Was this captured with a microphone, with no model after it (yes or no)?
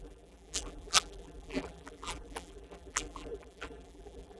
no